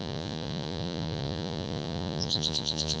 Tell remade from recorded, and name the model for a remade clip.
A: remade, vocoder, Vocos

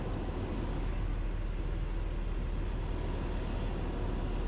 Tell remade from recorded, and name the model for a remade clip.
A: recorded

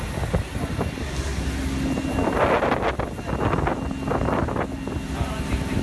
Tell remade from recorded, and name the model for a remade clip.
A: recorded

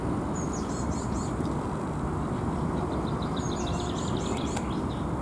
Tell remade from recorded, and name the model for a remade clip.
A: remade, vocoder, BigVGAN v2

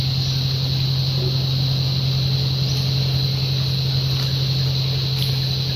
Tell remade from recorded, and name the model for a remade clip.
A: recorded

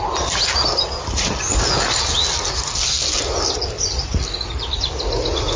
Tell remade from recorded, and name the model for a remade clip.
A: recorded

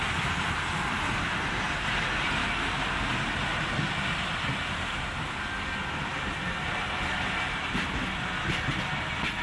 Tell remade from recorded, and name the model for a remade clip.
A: recorded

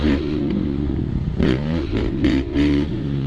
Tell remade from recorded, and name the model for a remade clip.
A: remade, vocoder, Vocos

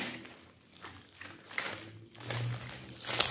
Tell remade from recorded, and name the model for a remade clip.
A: recorded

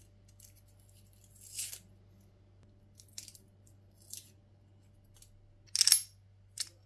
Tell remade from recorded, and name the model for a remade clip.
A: recorded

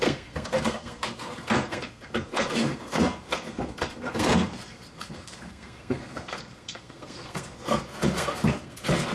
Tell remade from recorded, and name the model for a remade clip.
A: remade, codec, SNAC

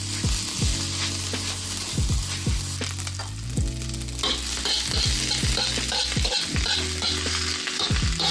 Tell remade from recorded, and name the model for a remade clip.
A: recorded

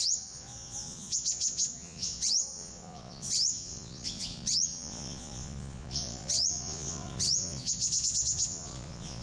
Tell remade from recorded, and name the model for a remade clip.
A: remade, vocoder, Vocos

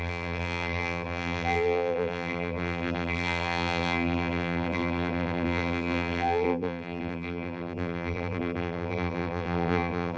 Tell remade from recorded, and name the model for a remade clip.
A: remade, vocoder, BigVGAN v2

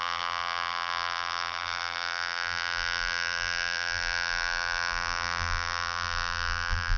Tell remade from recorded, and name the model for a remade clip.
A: remade, vocoder, BigVGAN v2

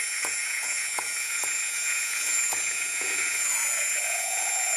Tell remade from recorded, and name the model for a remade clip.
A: remade, vocoder, Vocos